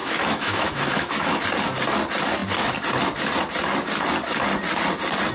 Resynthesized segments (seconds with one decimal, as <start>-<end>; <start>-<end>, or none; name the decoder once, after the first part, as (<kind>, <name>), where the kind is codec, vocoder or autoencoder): 0.0-1.4 (autoencoder, DAC-VAE)